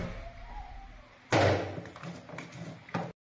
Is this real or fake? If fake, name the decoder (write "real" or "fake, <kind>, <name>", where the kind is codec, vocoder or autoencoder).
real